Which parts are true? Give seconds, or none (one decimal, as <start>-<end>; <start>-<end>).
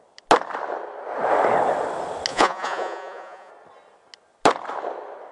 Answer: 0.0-2.3; 3.5-5.3